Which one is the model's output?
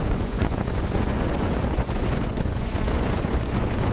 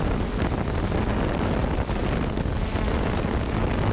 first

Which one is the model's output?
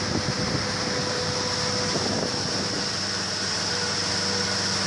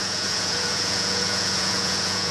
second